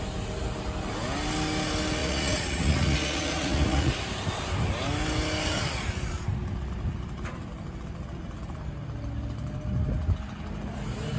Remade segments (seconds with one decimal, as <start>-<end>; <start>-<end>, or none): 2.0-3.9